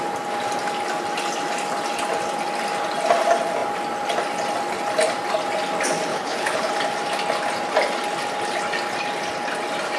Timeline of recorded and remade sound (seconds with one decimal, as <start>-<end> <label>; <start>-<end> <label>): 0.0-6.1 recorded; 6.1-6.7 remade; 6.7-10.0 recorded